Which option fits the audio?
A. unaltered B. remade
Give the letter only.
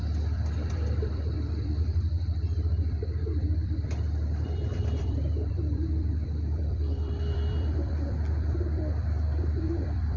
B